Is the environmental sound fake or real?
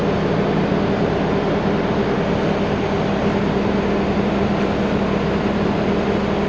real